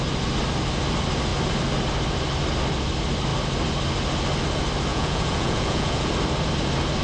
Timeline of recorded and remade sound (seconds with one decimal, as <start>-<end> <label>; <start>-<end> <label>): 0.0-4.9 recorded; 4.9-6.1 remade; 6.1-7.0 recorded